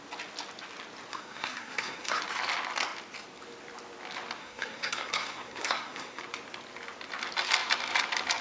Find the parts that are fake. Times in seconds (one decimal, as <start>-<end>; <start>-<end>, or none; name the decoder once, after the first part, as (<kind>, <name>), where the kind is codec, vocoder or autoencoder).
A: 1.1-2.2 (codec, SNAC); 4.4-6.2